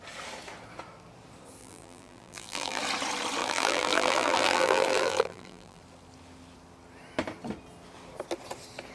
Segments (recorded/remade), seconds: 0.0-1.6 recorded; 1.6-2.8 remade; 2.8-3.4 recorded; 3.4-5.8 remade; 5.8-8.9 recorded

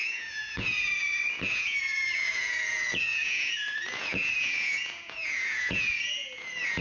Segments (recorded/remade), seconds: 0.0-6.8 remade

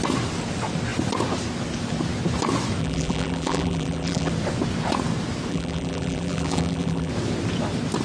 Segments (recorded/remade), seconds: 0.0-2.8 recorded; 2.8-4.3 remade; 4.3-5.5 recorded; 5.5-7.1 remade; 7.1-8.0 recorded

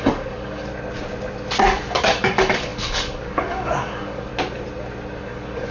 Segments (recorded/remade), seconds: 0.0-0.7 remade; 0.7-1.6 recorded; 1.6-4.3 remade; 4.3-5.2 recorded; 5.2-5.7 remade

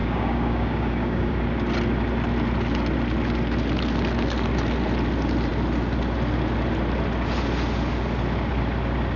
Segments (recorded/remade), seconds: 0.0-1.3 remade; 1.3-9.2 recorded

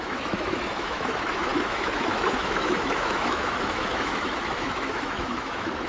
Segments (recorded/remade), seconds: 0.0-5.9 remade

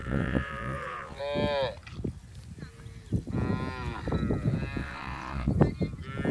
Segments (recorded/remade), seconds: 0.0-1.2 remade; 1.2-4.8 recorded; 4.8-5.5 remade; 5.5-6.3 recorded

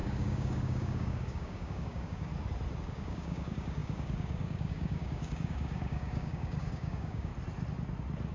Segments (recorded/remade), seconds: 0.0-2.3 remade; 2.3-2.8 recorded; 2.8-7.3 remade; 7.3-8.3 recorded